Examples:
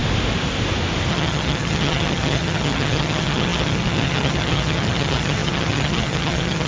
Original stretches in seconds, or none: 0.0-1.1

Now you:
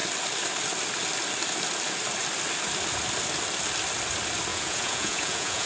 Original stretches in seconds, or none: 0.0-4.5

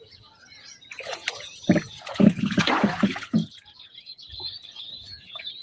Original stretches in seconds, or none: none

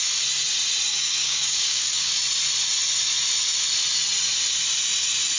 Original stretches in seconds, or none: 0.0-0.9; 2.2-5.4